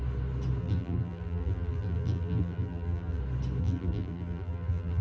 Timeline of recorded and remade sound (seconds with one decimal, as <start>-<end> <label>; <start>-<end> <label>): 0.0-0.6 recorded; 0.6-3.2 remade; 3.2-3.6 recorded; 3.6-5.0 remade